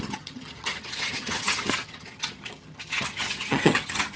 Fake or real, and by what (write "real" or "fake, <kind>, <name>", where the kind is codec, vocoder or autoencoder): fake, vocoder, HiFi-GAN